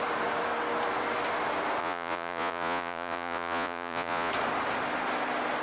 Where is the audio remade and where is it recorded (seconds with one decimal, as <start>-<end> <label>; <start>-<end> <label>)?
0.0-1.8 recorded; 1.8-4.3 remade; 4.3-5.6 recorded